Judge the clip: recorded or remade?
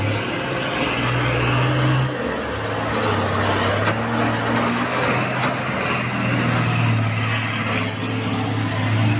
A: recorded